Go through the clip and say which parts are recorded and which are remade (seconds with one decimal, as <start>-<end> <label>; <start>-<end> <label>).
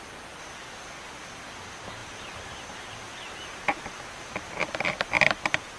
0.0-5.8 recorded